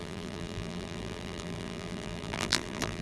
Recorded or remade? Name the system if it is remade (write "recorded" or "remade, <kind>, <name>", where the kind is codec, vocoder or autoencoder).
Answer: remade, vocoder, BigVGAN v2